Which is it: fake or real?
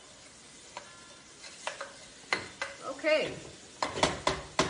real